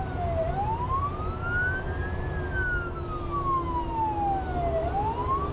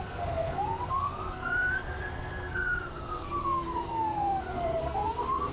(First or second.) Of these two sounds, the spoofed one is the second